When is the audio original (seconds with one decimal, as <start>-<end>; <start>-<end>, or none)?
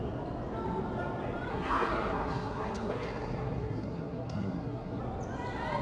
0.0-1.5; 5.0-5.8